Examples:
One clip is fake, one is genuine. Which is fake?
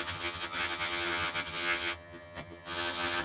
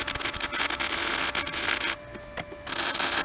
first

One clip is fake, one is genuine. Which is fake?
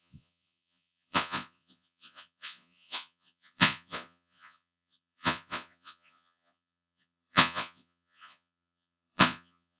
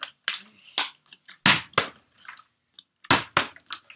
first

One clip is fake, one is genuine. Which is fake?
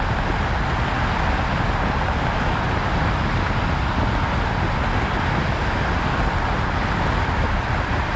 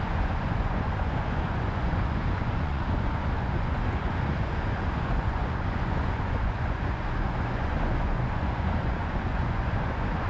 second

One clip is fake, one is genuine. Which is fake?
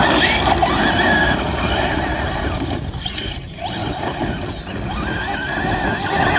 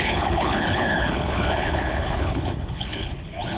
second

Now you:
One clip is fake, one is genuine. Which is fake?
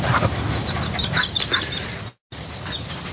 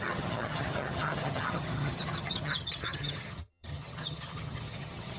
second